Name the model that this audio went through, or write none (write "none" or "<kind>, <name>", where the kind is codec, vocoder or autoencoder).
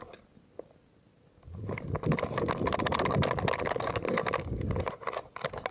none